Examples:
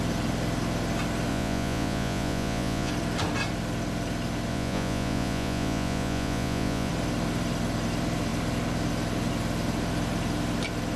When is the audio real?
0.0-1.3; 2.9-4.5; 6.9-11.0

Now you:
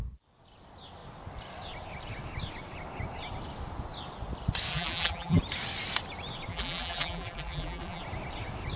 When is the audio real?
0.0-4.7; 5.4-6.5; 8.0-8.8

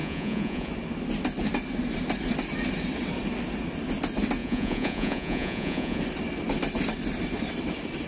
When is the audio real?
0.7-4.4; 6.0-8.1

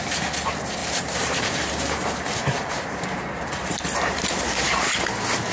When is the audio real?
0.0-0.8; 4.1-5.5

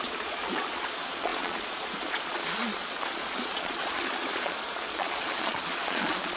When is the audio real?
none

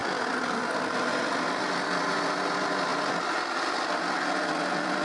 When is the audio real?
0.0-5.0